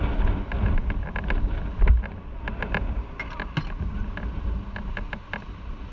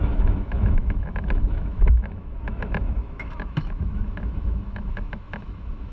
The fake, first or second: second